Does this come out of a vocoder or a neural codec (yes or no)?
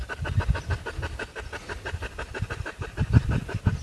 no